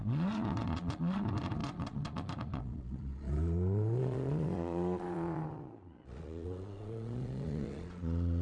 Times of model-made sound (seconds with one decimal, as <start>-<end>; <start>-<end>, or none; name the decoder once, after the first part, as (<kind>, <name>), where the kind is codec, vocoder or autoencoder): 0.0-8.4 (vocoder, Vocos)